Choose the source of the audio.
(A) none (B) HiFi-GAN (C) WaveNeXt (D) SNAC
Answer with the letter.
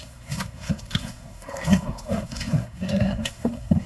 D